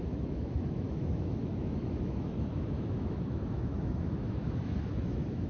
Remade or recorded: remade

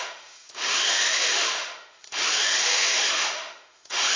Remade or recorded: remade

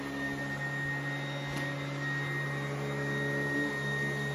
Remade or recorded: recorded